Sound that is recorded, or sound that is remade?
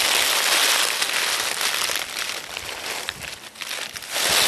recorded